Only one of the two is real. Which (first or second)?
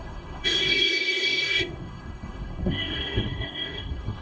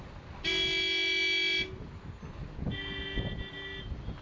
second